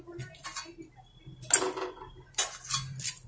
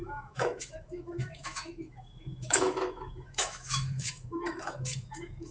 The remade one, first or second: second